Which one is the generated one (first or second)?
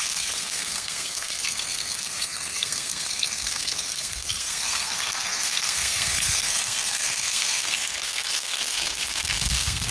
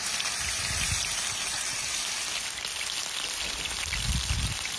first